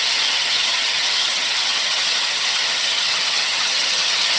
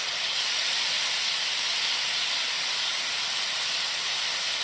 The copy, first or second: first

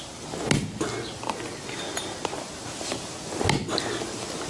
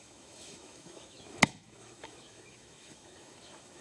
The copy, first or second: second